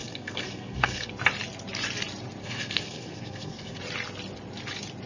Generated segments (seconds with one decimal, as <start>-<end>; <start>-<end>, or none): 0.0-1.1; 2.4-3.8